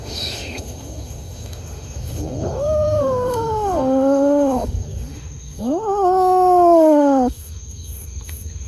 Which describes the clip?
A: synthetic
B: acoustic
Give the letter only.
A